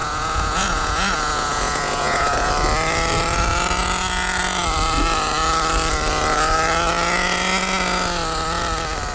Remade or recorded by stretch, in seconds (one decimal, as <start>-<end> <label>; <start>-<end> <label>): 0.0-2.5 remade; 2.5-9.1 recorded